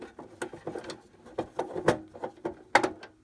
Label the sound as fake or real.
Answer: real